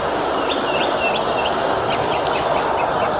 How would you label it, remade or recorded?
recorded